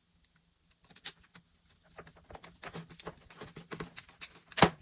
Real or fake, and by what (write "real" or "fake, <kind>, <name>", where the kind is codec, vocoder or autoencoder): real